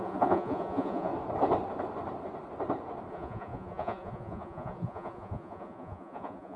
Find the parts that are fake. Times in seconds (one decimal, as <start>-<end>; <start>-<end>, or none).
0.0-1.1; 3.1-6.6